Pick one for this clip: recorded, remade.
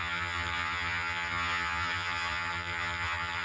remade